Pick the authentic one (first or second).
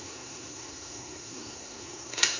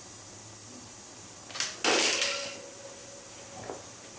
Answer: second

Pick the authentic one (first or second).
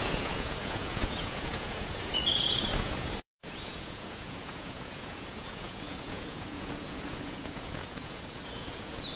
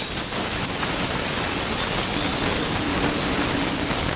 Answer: second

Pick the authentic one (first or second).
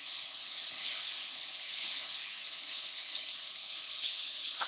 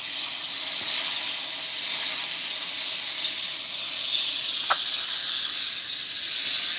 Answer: second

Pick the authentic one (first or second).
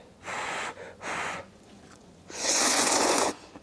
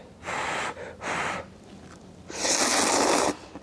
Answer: second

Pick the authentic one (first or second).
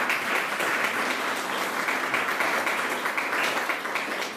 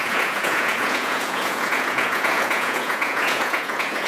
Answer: first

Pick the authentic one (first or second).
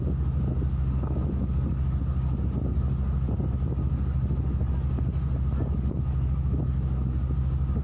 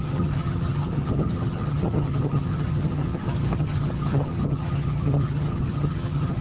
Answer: first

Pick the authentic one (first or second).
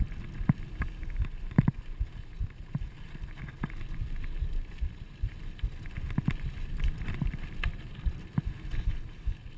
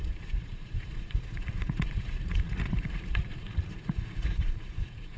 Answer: first